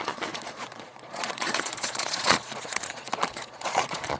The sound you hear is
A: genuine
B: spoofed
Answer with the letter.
B